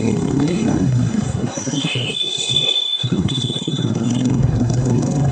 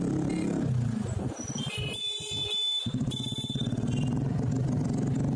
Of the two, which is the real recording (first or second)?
second